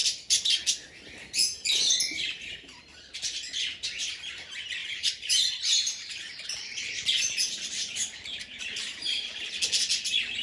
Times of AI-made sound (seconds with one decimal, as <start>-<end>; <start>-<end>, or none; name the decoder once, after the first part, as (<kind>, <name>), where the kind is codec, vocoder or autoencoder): 1.4-3.2 (vocoder, BigVGAN v2); 4.8-9.5